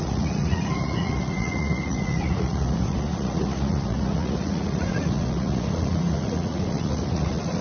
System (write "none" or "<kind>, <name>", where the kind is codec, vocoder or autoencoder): vocoder, Vocos